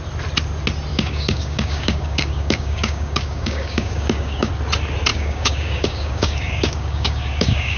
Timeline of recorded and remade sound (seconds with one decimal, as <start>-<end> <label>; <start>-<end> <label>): 0.0-0.9 recorded; 0.9-4.5 remade; 4.5-5.1 recorded; 5.1-7.8 remade